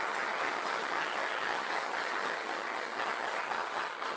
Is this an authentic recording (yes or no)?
no